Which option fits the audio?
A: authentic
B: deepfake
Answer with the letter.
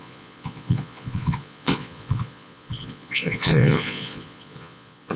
B